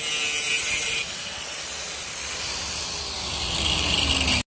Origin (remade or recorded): recorded